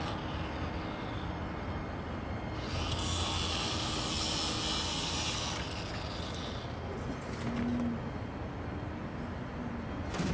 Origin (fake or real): real